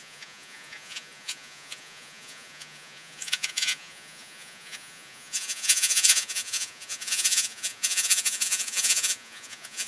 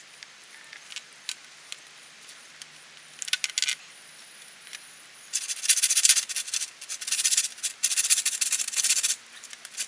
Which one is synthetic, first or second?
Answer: first